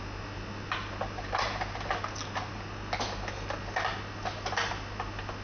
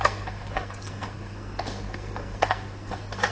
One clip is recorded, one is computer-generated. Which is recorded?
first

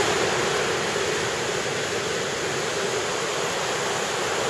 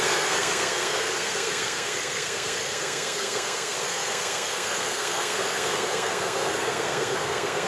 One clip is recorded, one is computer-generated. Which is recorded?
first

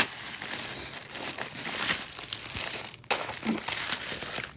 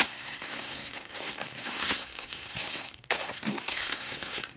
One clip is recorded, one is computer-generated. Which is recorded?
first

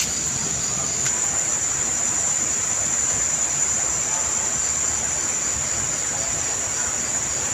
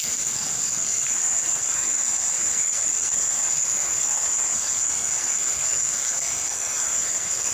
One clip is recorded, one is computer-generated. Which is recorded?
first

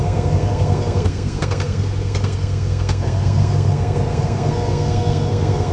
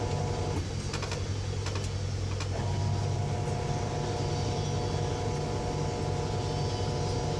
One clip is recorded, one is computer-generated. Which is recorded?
second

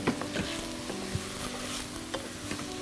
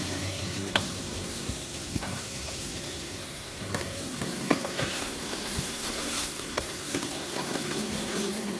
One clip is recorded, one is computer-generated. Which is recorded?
first